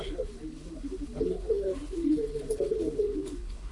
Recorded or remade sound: remade